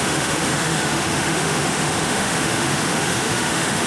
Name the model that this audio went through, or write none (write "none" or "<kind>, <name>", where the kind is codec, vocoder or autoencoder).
autoencoder, DAC-VAE